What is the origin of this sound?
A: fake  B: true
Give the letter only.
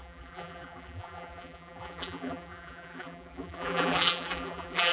A